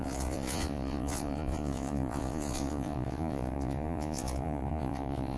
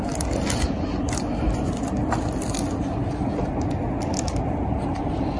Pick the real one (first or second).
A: second